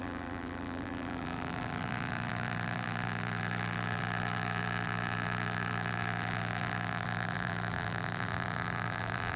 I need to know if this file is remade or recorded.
remade